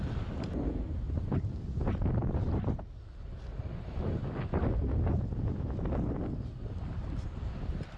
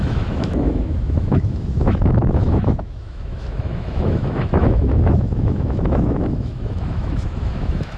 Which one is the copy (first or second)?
second